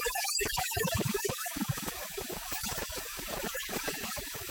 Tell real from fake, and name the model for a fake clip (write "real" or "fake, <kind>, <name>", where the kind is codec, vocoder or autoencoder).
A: fake, codec, DAC